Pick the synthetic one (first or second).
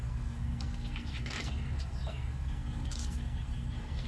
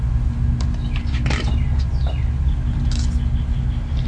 first